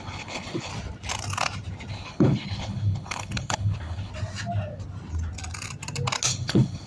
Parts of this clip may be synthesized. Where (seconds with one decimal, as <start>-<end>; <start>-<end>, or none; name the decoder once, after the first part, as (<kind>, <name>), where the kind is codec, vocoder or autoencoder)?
0.0-0.7 (codec, HILCodec); 1.9-4.1; 6.3-6.9